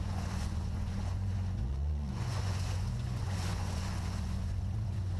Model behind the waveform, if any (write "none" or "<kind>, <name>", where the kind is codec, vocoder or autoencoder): vocoder, Vocos